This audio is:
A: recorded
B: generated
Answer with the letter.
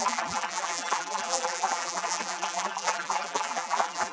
B